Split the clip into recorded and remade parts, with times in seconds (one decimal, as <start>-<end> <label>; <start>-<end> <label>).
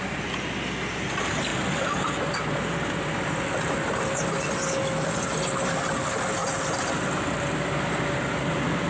0.0-1.5 recorded; 1.5-2.3 remade; 2.3-6.4 recorded; 6.4-7.0 remade; 7.0-8.9 recorded